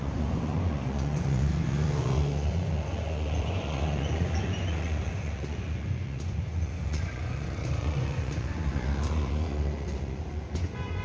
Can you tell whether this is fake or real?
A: fake